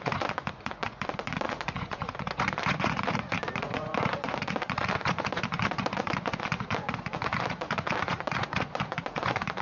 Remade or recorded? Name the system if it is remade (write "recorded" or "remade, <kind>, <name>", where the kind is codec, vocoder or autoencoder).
remade, vocoder, Vocos